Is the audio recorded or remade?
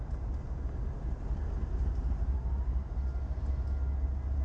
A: recorded